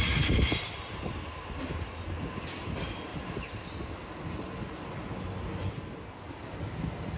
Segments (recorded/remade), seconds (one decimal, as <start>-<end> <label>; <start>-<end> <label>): 0.0-7.2 recorded